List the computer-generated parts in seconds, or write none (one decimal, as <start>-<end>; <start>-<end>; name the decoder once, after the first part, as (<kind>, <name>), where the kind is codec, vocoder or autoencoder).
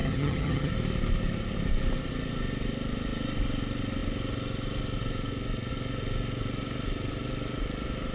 0.0-0.7 (vocoder, HiFi-GAN)